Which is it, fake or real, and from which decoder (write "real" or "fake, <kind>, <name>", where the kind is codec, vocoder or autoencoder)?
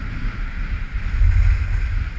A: real